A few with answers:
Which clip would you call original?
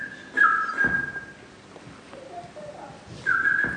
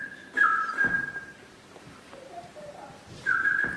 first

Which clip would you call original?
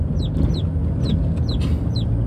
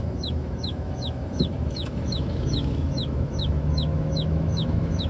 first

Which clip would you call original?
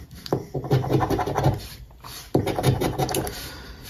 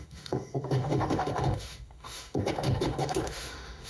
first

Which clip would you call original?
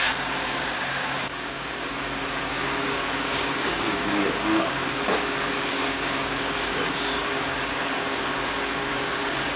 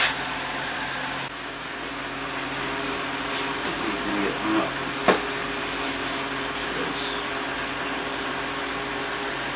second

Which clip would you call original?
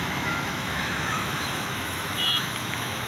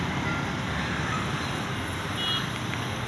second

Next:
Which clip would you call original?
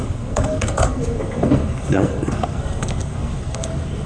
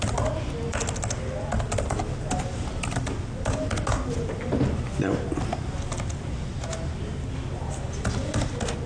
second